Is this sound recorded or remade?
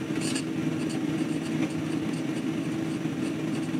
recorded